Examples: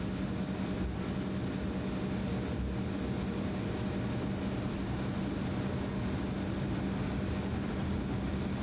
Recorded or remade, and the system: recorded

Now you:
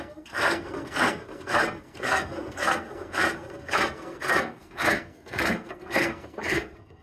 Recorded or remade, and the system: remade, codec, SNAC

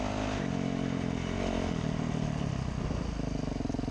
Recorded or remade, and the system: recorded